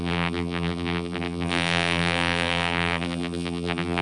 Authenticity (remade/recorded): remade